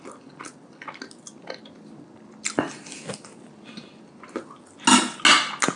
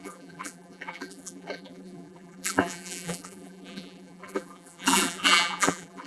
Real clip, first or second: first